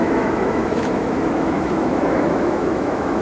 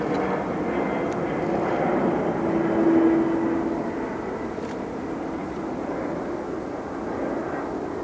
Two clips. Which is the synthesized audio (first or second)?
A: first